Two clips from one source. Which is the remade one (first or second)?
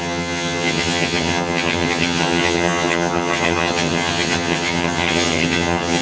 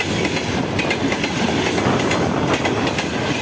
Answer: first